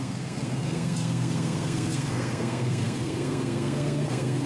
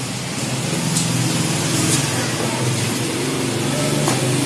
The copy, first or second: first